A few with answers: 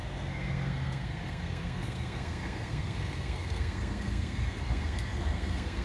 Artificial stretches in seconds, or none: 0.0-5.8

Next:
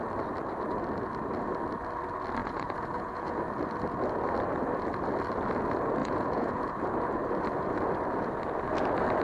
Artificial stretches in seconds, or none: 2.4-3.4; 6.0-6.8

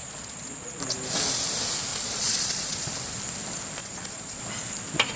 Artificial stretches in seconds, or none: 0.0-0.8; 1.9-2.9; 3.8-4.4

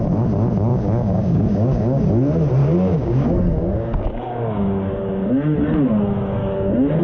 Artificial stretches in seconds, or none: 0.7-2.0; 2.6-5.3; 6.4-7.0

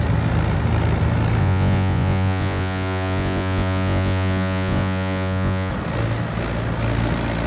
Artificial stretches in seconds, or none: 1.4-5.7

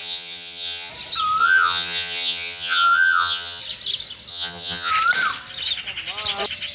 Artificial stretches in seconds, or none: 0.0-0.9; 1.4-3.6; 4.3-4.9

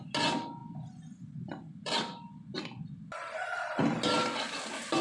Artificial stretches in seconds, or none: none